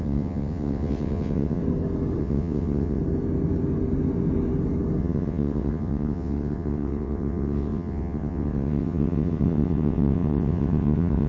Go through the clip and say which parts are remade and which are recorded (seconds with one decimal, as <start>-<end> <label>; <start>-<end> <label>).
0.0-1.6 remade; 1.6-2.2 recorded; 2.2-3.0 remade; 3.0-5.0 recorded; 5.0-11.3 remade

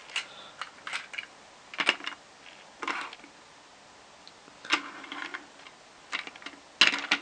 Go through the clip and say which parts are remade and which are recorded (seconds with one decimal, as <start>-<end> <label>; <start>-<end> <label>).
0.0-7.2 recorded

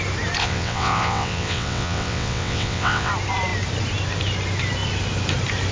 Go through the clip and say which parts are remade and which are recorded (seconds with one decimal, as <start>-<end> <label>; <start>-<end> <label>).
0.0-0.4 recorded; 0.4-3.1 remade; 3.1-5.7 recorded

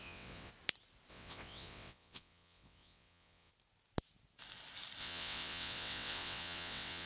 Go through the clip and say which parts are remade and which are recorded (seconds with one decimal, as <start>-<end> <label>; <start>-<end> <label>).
0.0-0.5 remade; 0.5-1.1 recorded; 1.1-3.5 remade; 3.5-5.0 recorded; 5.0-7.1 remade

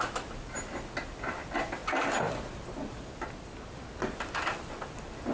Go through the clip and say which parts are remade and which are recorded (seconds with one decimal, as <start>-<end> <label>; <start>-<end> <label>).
0.0-5.3 recorded

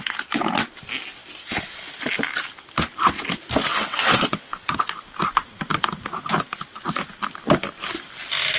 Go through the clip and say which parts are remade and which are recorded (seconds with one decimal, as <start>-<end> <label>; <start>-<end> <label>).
0.0-3.7 recorded; 3.7-4.8 remade; 4.8-8.6 recorded

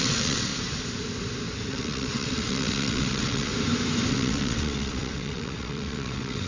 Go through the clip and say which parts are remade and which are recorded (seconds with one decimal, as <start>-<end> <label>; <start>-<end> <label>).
0.0-0.5 remade; 0.5-1.7 recorded; 1.7-3.5 remade; 3.5-4.1 recorded; 4.1-6.5 remade

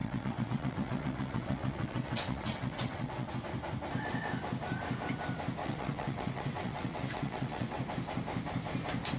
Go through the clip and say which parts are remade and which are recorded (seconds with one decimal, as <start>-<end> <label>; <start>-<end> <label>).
0.0-3.3 remade; 3.3-5.6 recorded; 5.6-7.8 remade; 7.8-9.2 recorded